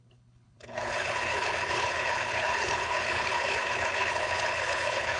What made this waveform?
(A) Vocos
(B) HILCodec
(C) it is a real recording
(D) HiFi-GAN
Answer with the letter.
B